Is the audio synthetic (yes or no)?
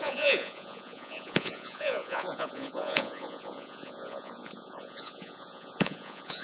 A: yes